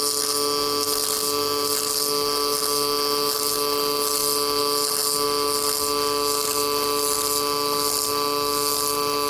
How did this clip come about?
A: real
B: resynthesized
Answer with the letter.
A